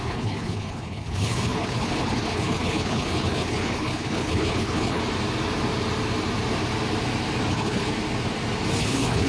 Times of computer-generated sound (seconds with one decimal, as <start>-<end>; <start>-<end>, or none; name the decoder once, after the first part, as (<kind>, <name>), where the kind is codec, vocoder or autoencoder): 0.0-5.0 (codec, HILCodec); 7.5-7.9; 8.8-9.3